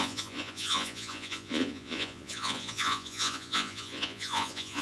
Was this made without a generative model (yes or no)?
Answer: no